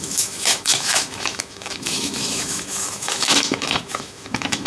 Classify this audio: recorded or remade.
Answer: remade